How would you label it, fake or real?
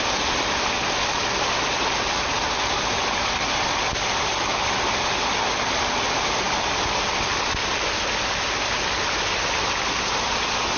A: real